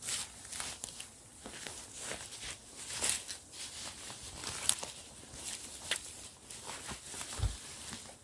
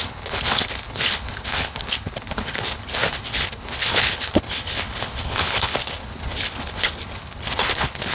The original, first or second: first